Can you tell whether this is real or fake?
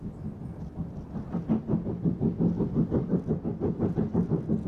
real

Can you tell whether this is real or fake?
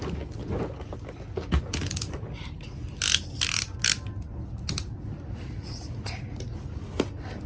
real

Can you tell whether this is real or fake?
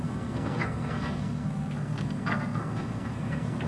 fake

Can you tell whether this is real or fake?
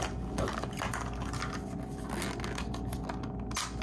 real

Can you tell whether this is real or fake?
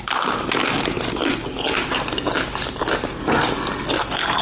real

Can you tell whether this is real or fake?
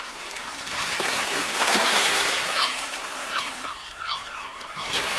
fake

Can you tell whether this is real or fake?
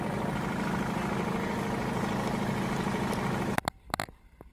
real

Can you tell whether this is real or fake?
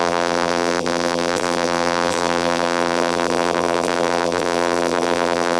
fake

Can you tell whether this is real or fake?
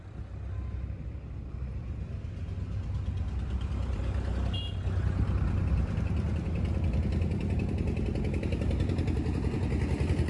real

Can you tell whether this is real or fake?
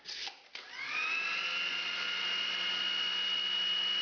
real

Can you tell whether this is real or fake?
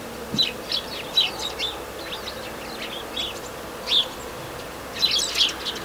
real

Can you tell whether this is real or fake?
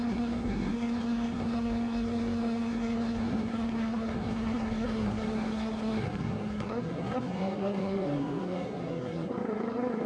fake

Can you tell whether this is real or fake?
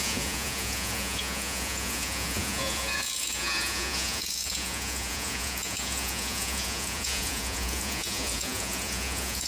fake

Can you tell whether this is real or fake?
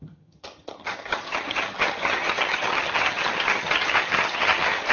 fake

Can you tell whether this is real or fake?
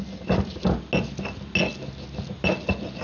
real